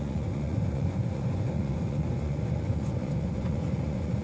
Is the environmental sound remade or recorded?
remade